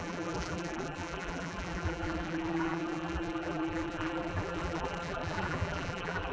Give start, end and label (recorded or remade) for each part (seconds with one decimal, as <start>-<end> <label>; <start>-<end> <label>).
0.0-6.3 remade